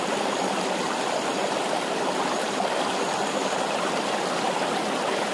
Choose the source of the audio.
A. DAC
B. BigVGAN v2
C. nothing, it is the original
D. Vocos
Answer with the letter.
C